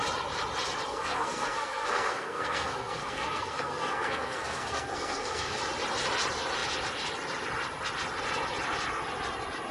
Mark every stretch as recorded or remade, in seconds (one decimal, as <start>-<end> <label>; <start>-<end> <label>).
0.0-0.9 recorded; 0.9-5.6 remade; 5.6-9.7 recorded